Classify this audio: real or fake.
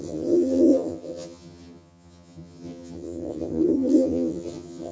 fake